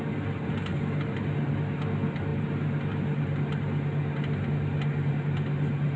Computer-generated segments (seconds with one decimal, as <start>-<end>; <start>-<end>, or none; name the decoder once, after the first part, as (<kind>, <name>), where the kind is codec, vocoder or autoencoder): none